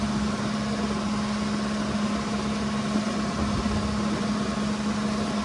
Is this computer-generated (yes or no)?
no